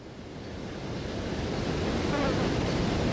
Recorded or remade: recorded